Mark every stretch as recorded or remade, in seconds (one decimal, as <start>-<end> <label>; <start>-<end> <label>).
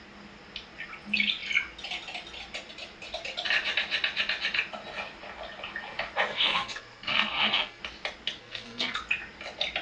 0.0-6.3 recorded; 6.3-7.8 remade; 7.8-8.4 recorded; 8.4-9.0 remade; 9.0-9.8 recorded